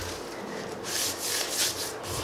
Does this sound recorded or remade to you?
recorded